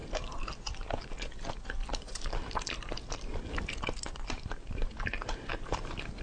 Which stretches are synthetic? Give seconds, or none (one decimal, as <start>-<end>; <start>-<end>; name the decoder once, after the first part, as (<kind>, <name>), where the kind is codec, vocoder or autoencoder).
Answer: none